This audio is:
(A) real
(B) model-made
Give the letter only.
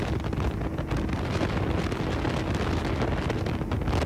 A